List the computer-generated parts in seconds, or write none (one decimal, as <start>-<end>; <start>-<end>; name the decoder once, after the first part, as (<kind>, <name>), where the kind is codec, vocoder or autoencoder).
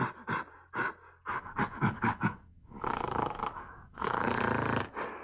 1.3-4.4 (codec, DAC)